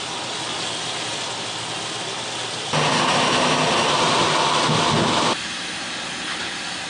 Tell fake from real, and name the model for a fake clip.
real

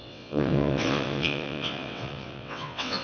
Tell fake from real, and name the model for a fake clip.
fake, vocoder, WaveNeXt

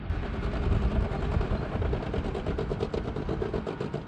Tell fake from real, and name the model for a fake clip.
real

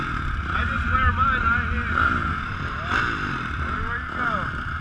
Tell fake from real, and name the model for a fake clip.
real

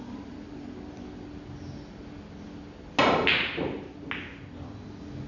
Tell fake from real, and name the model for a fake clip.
real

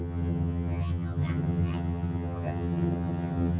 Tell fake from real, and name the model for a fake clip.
fake, vocoder, HiFi-GAN